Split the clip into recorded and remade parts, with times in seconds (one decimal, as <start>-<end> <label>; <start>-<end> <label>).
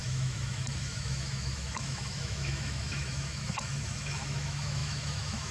0.0-5.5 remade